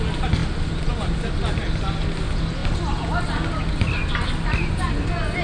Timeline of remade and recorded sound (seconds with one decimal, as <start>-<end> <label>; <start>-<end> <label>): 0.0-5.4 recorded